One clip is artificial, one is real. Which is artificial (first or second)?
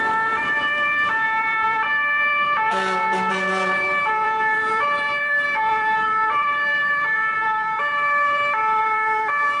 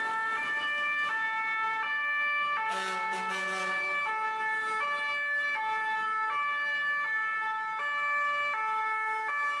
first